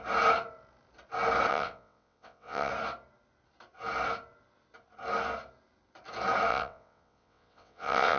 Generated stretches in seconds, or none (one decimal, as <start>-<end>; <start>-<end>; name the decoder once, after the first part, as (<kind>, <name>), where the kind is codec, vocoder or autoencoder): 1.5-2.7 (vocoder, WaveNeXt); 6.5-8.2